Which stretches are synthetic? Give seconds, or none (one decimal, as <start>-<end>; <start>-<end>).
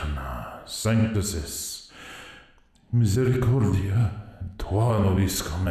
4.0-4.9